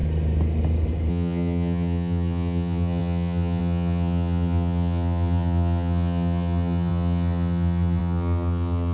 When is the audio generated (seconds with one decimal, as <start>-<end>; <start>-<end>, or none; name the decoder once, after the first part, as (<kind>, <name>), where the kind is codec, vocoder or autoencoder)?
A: 1.1-8.9 (vocoder, HiFi-GAN)

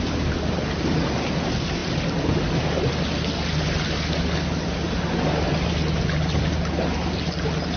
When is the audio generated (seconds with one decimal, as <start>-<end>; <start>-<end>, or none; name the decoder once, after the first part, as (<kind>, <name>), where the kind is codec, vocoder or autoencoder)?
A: none